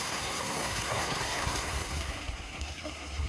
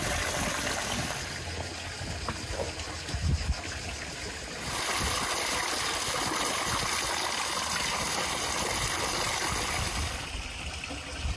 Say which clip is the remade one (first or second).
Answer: first